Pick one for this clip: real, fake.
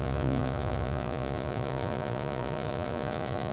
fake